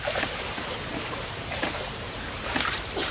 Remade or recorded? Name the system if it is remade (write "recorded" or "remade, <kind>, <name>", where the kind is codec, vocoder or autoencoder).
remade, vocoder, BigVGAN v2